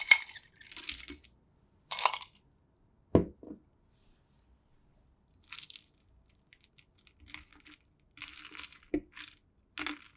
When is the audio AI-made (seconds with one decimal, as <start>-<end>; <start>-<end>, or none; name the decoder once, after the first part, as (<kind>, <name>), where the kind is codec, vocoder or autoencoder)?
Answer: none